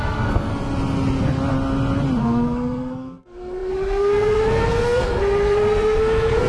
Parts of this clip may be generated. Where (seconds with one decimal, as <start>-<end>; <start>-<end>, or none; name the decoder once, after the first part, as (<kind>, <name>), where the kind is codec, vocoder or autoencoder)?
0.0-0.5 (codec, SNAC); 2.2-6.5